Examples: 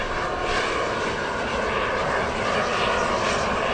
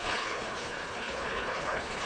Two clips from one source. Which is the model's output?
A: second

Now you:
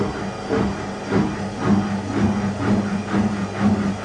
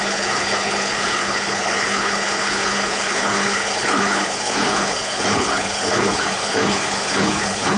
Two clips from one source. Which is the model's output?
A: second